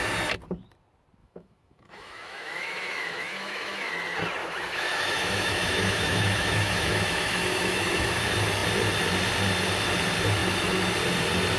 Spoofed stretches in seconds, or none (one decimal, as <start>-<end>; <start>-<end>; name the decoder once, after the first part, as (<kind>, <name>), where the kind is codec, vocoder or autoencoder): 1.2-3.9 (autoencoder, DAC-VAE); 4.4-8.2